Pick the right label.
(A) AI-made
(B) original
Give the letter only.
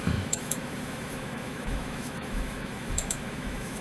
A